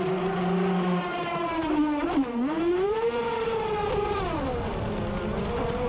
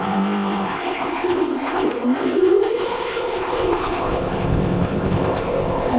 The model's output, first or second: second